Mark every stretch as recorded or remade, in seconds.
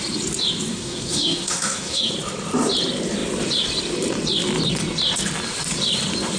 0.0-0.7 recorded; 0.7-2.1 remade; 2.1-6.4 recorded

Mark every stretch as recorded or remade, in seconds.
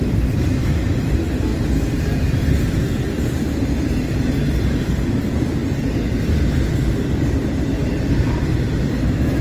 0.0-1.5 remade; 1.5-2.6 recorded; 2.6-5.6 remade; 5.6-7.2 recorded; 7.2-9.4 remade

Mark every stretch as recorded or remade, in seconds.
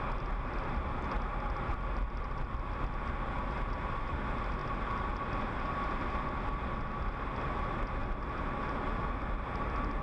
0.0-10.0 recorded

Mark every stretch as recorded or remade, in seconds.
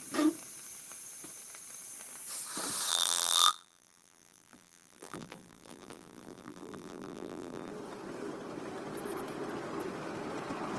0.0-2.9 recorded; 2.9-7.7 remade; 7.7-10.8 recorded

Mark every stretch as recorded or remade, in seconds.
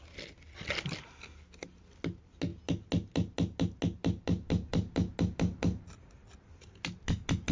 0.0-7.5 recorded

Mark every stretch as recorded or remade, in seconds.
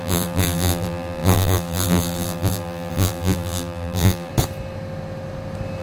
0.0-4.3 remade; 4.3-5.8 recorded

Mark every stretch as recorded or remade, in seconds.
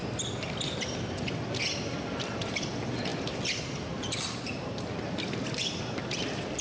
0.0-6.6 recorded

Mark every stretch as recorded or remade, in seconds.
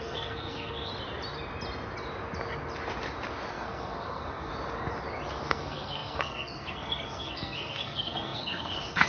0.0-0.9 remade; 0.9-3.5 recorded; 3.5-4.5 remade; 4.5-5.5 recorded; 5.5-9.1 remade